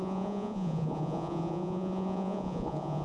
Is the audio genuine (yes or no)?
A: no